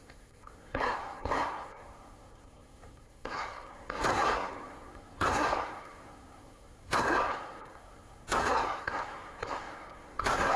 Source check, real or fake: fake